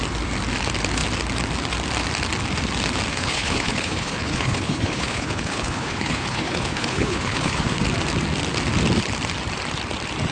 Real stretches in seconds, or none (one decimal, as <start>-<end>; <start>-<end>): 0.0-3.1; 7.8-10.3